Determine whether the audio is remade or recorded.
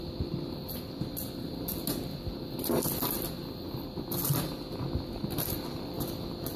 recorded